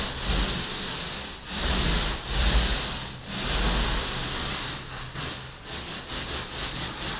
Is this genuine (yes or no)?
yes